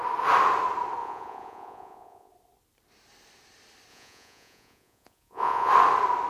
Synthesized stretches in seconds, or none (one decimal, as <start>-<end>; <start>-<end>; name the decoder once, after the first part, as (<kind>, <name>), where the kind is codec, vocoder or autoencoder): 1.0-2.3 (vocoder, Vocos); 3.9-5.7